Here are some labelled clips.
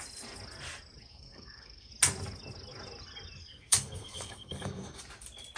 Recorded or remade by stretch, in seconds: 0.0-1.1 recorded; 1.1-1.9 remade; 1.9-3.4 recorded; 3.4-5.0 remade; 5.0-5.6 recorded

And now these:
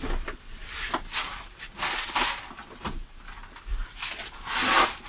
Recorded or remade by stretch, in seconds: 0.0-5.1 recorded

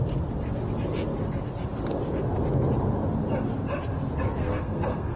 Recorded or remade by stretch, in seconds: 0.0-4.4 recorded; 4.4-5.2 remade